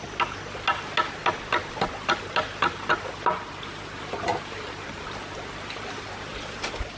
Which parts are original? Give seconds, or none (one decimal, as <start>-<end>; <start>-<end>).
0.0-7.0